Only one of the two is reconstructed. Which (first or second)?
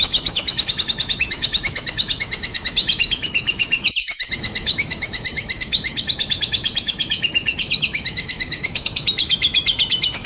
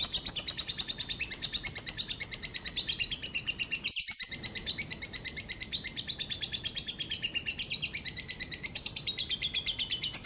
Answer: first